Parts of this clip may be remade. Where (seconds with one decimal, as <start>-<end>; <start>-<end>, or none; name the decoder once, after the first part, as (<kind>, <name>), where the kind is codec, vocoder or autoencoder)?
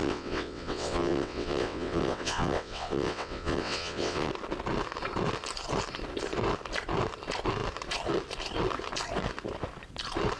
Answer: 0.0-4.3 (vocoder, WaveNeXt)